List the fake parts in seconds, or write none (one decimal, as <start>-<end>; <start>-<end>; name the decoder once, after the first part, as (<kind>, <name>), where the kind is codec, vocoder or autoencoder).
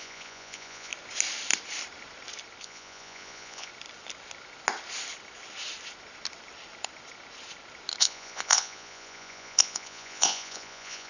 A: 0.0-0.9 (vocoder, Vocos); 2.6-3.7; 8.0-11.1